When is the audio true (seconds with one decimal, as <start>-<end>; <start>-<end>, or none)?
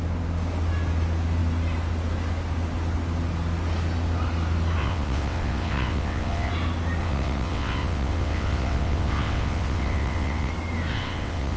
0.0-4.8; 6.5-7.0; 10.5-10.9